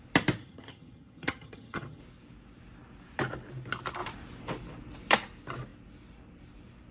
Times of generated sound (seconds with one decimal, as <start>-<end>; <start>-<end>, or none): 0.4-2.0